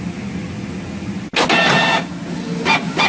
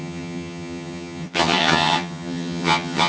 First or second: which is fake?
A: second